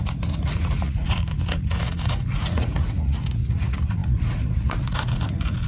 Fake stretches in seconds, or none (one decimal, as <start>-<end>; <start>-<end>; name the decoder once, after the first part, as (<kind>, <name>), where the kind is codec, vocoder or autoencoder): 0.0-5.7 (vocoder, Vocos)